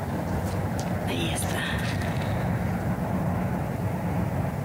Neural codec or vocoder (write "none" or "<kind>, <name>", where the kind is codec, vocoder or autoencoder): none